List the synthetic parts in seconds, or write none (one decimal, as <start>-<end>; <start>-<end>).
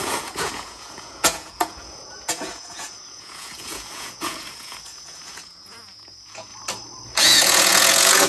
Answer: 0.0-6.5; 7.2-8.3